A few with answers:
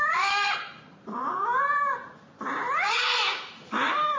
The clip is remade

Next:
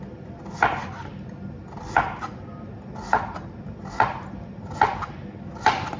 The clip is recorded